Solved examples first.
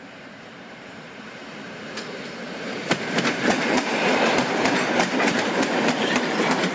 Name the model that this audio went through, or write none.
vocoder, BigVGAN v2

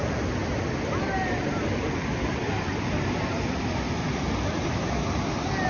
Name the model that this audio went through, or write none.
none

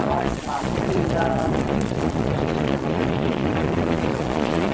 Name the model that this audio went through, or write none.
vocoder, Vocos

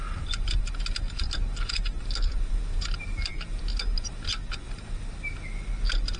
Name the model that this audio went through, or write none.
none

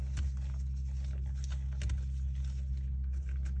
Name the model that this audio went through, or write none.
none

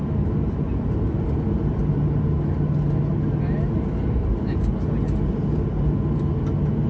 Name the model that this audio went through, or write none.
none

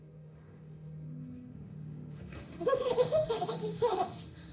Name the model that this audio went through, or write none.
autoencoder, DAC-VAE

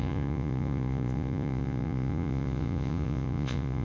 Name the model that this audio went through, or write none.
vocoder, Vocos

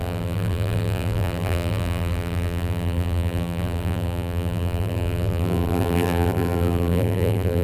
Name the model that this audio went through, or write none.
vocoder, BigVGAN v2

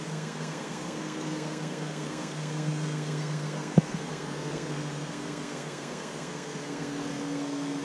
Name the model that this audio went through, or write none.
codec, SNAC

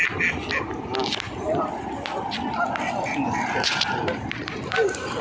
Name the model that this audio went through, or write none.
none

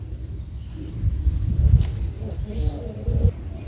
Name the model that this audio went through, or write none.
none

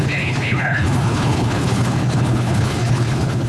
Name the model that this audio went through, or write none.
codec, HILCodec